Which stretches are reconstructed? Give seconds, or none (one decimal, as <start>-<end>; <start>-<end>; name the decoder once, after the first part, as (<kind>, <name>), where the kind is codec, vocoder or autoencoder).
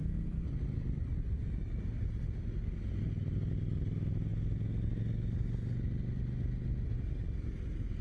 none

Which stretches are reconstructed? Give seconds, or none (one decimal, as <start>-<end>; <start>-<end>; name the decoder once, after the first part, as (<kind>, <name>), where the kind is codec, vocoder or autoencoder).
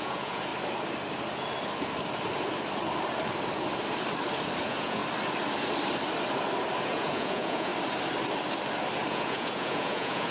0.0-0.5 (vocoder, Vocos); 4.6-5.0; 6.8-7.7; 9.1-10.3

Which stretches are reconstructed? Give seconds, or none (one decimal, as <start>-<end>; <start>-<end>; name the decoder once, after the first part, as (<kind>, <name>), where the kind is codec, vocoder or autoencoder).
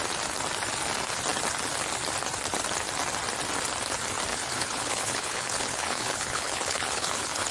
4.3-7.5 (codec, HILCodec)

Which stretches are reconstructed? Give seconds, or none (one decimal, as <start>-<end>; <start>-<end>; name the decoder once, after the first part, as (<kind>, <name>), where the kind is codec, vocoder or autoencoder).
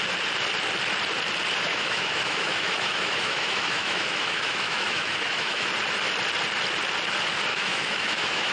1.7-5.7 (autoencoder, DAC-VAE); 7.5-8.5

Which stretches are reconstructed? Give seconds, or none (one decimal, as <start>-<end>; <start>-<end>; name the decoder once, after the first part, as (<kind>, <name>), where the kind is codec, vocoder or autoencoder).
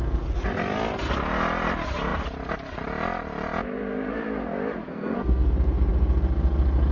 4.9-5.5 (codec, SNAC)